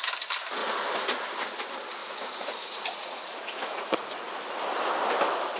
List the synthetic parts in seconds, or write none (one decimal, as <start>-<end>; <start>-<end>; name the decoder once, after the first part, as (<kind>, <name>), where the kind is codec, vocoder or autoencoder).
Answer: 2.0-4.3 (vocoder, Vocos)